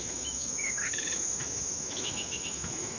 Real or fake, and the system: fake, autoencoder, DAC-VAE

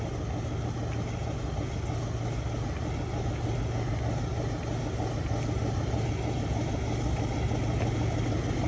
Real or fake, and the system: real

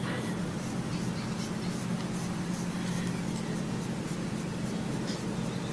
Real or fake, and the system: real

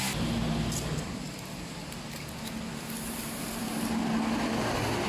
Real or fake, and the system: real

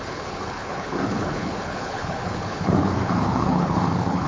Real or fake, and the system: fake, codec, HILCodec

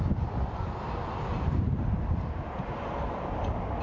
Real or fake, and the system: real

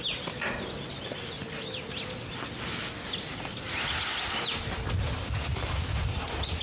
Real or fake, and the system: real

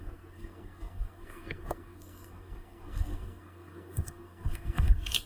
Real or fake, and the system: fake, codec, SNAC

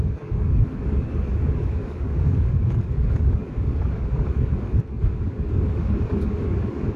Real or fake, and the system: fake, codec, DAC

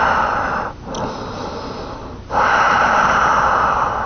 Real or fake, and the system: real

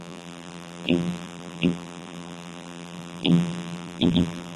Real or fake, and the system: fake, vocoder, BigVGAN v2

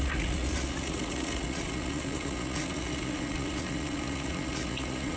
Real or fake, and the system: fake, vocoder, Vocos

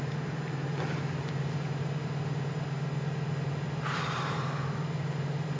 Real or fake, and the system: fake, vocoder, BigVGAN v2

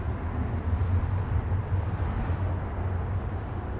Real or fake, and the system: real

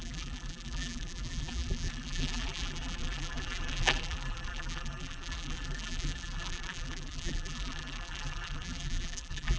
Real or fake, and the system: fake, vocoder, BigVGAN v2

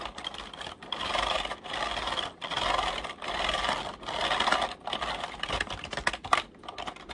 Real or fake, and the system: real